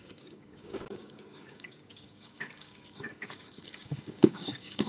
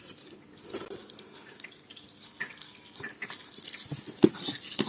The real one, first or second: second